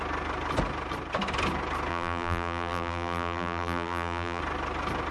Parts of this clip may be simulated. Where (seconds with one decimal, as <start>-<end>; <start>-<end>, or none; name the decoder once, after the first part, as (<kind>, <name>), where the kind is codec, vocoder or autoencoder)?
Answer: 1.9-4.4 (vocoder, BigVGAN v2)